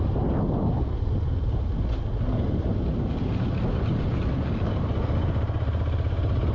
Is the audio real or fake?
real